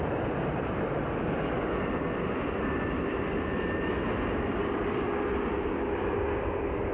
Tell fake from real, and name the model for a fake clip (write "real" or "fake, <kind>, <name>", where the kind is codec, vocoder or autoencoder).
real